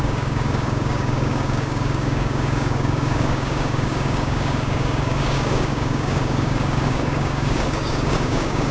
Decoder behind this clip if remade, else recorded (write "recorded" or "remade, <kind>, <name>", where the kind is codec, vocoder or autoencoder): remade, codec, DAC